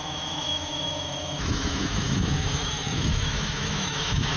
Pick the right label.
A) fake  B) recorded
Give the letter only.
A